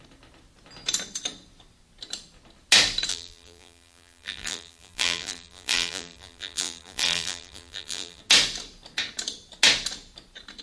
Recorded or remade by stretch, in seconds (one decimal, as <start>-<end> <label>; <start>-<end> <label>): 0.0-3.1 recorded; 3.1-8.2 remade; 8.2-10.6 recorded